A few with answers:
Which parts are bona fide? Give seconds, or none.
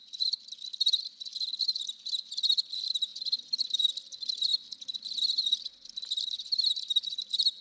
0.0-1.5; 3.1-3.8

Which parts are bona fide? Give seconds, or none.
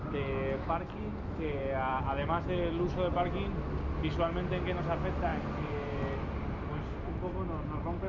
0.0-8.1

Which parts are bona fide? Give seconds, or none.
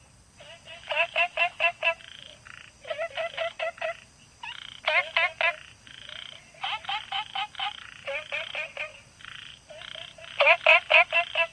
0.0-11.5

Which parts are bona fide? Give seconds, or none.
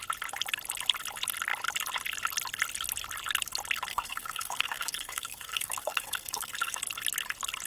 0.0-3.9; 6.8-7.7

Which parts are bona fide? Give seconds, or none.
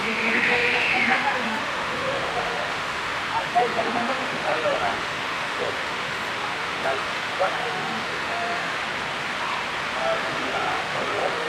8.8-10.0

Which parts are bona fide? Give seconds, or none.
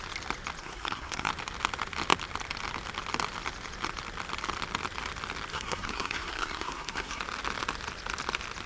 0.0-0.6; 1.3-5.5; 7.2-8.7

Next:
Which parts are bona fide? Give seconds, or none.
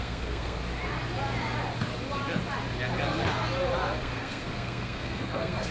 0.6-4.0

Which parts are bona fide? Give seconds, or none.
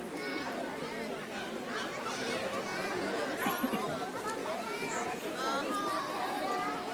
0.0-2.7; 3.3-4.4; 5.4-6.9